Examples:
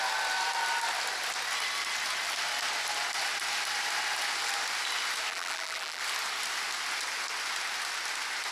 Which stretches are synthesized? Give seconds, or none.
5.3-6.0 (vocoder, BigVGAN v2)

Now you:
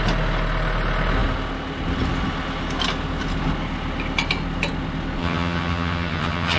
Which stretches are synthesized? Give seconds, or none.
5.2-6.6 (vocoder, HiFi-GAN)